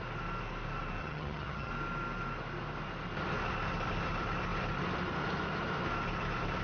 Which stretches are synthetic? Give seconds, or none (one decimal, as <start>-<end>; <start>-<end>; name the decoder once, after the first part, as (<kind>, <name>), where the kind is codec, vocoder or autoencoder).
1.0-1.7 (vocoder, HiFi-GAN)